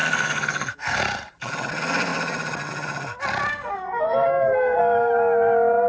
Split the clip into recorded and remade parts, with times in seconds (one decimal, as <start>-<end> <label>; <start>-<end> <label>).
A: 0.0-1.0 remade; 1.0-3.5 recorded; 3.5-4.8 remade; 4.8-5.9 recorded